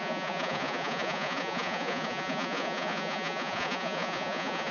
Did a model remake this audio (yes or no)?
yes